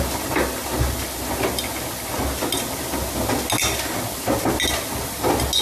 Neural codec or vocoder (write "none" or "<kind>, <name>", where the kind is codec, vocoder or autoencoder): none